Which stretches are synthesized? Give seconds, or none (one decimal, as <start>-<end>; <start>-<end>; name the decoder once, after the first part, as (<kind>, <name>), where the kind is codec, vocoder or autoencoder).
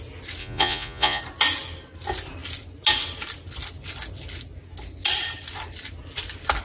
0.4-1.2 (vocoder, Vocos)